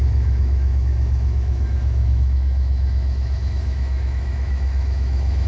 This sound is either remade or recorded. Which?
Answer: remade